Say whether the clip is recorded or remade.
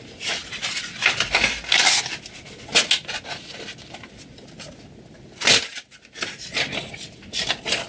recorded